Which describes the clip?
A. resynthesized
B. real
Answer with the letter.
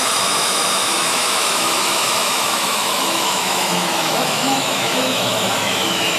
A